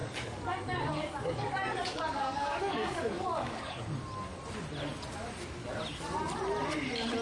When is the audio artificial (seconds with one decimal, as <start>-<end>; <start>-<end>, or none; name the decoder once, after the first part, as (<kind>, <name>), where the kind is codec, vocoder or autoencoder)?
0.0-3.8 (codec, DAC)